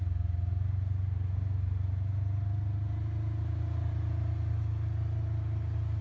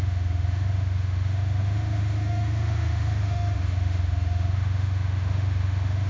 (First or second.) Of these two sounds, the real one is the first